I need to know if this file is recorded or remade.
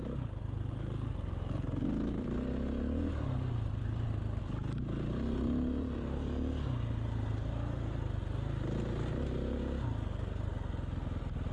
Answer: recorded